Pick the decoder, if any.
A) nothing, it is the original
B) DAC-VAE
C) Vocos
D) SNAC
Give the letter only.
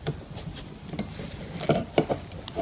A